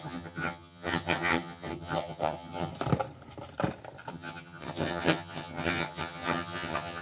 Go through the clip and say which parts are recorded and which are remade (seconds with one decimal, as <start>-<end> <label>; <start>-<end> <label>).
0.0-2.7 remade; 2.7-4.1 recorded; 4.1-7.0 remade